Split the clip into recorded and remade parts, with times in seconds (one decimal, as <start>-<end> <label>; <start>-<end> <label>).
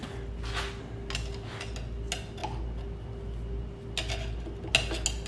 0.0-5.3 recorded